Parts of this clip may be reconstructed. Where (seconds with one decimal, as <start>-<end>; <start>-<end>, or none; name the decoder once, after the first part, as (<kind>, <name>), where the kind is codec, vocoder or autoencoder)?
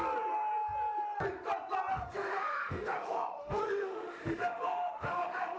1.9-5.6 (autoencoder, DAC-VAE)